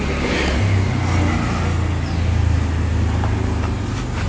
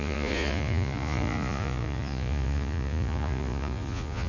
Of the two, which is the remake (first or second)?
second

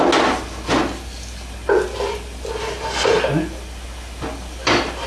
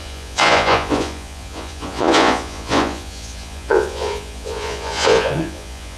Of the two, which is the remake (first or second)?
second